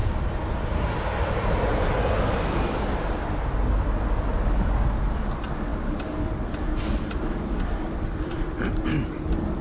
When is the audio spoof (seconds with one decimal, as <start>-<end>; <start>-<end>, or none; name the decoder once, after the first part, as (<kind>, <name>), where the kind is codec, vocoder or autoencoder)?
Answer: none